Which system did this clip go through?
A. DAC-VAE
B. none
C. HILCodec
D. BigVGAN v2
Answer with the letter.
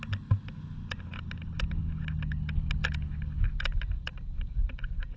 B